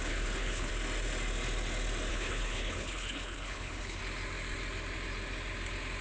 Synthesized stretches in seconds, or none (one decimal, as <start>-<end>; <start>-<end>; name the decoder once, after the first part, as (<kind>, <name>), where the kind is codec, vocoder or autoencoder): 0.0-0.7 (codec, HILCodec); 2.1-4.0